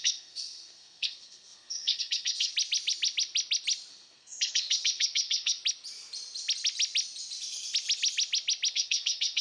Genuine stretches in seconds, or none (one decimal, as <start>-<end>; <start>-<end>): 2.5-3.9; 5.6-8.7